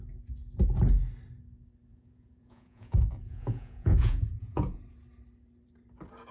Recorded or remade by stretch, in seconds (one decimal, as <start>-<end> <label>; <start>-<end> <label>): 0.0-1.9 recorded; 1.9-4.8 remade; 4.8-6.3 recorded

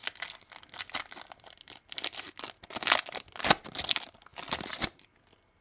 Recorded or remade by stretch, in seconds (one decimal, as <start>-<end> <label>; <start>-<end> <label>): 0.0-5.6 recorded

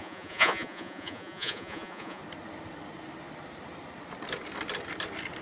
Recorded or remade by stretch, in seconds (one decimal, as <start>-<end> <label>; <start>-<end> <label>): 0.0-2.2 remade; 2.2-5.4 recorded

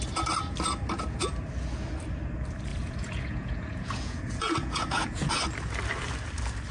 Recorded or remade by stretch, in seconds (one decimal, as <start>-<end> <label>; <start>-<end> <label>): 0.0-2.7 recorded; 2.7-5.3 remade; 5.3-6.7 recorded